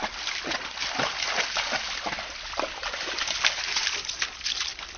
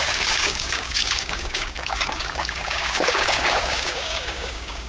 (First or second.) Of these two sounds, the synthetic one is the second